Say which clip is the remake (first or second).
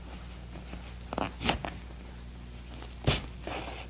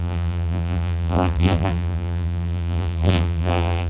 second